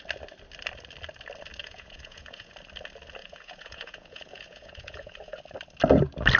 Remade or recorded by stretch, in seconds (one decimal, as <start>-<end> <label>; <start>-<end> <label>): 0.0-1.6 recorded; 1.6-2.5 remade; 2.5-3.2 recorded; 3.2-5.4 remade; 5.4-6.4 recorded